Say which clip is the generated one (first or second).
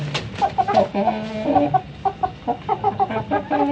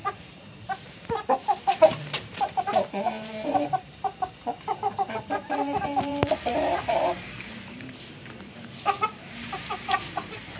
second